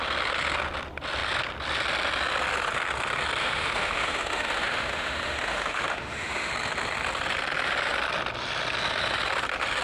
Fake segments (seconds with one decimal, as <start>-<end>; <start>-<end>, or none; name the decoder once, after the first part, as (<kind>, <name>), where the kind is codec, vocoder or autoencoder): 3.4-6.5 (autoencoder, DAC-VAE)